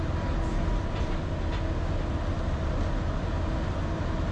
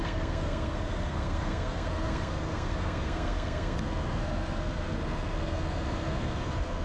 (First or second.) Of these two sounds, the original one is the first